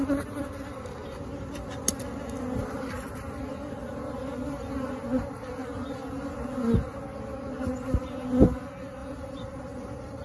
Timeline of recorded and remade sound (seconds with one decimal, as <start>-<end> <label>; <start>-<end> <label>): 0.0-9.0 recorded; 9.0-10.2 remade